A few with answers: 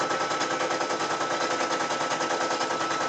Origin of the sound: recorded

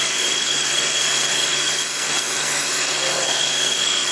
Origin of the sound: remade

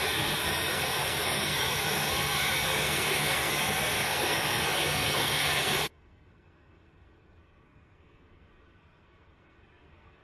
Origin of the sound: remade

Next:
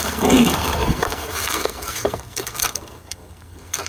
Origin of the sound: remade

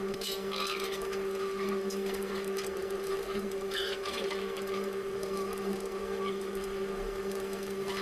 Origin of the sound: remade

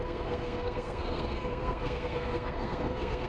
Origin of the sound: remade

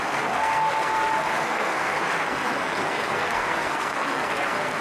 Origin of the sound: remade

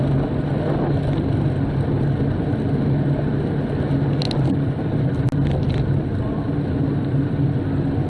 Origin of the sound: recorded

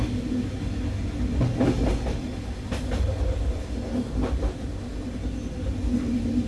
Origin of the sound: recorded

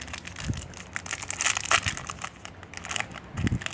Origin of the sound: recorded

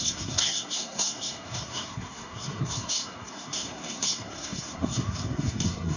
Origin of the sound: remade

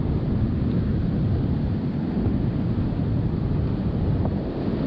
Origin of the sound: recorded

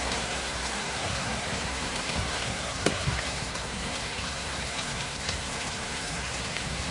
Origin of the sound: remade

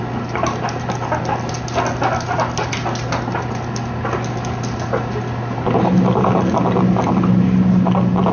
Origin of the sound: recorded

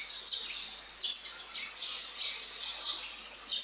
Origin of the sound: recorded